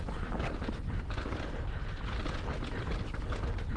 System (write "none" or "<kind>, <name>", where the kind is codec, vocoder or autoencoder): none